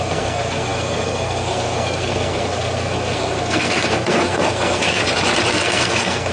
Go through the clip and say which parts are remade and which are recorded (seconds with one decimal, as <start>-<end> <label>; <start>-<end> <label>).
0.0-5.0 remade; 5.0-5.5 recorded; 5.5-6.3 remade